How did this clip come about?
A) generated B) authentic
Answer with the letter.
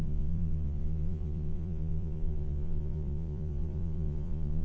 A